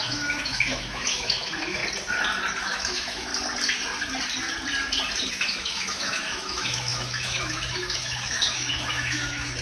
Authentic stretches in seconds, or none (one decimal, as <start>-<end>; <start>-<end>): 1.8-2.6; 3.3-5.3